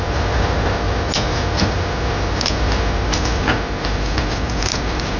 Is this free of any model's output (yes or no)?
yes